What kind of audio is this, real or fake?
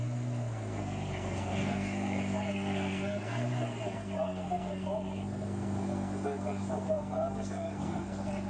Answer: fake